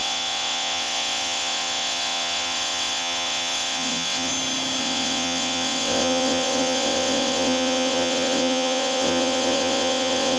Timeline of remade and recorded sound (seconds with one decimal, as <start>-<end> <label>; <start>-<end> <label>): 0.0-4.3 remade; 4.3-4.8 recorded; 4.8-10.4 remade